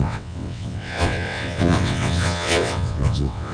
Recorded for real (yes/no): no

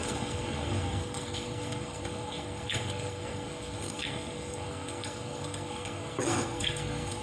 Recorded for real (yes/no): no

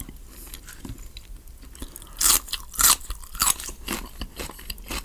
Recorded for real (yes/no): yes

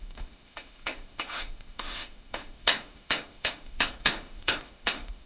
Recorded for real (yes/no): no